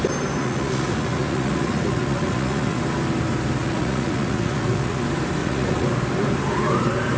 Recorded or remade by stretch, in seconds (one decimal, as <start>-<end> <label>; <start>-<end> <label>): 0.0-0.4 recorded; 0.4-2.8 remade; 2.8-3.6 recorded; 3.6-5.0 remade; 5.0-5.4 recorded; 5.4-5.9 remade; 5.9-7.2 recorded